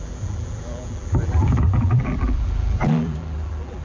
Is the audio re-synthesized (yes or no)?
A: yes